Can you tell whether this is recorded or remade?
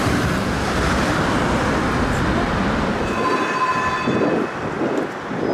recorded